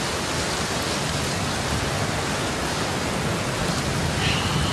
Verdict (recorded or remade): recorded